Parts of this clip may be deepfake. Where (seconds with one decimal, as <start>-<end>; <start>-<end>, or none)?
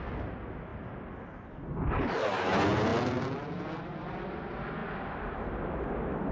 none